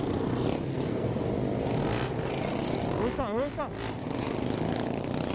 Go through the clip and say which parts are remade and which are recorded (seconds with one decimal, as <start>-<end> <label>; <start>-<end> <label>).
0.0-0.7 recorded; 0.7-1.2 remade; 1.2-5.3 recorded